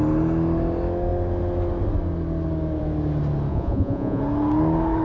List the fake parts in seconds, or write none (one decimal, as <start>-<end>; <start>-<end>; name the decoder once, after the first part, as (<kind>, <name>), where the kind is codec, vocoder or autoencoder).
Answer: 3.5-4.2 (vocoder, Vocos)